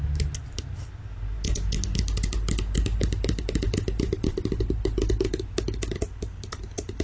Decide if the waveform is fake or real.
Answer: real